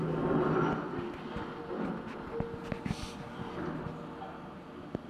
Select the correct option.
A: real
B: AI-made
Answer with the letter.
A